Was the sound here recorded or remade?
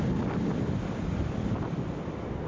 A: recorded